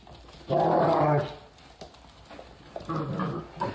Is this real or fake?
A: real